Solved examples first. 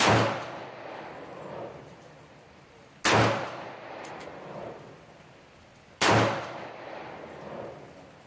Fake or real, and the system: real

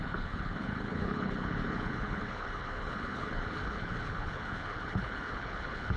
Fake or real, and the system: fake, codec, HILCodec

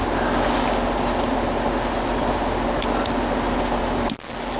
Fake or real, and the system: real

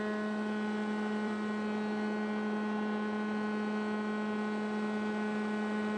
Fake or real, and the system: real